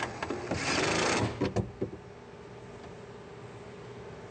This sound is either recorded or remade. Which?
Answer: recorded